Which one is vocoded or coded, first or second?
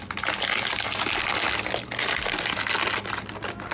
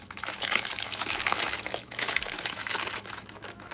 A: second